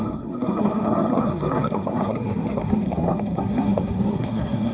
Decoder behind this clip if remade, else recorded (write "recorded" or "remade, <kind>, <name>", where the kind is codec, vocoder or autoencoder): remade, codec, SNAC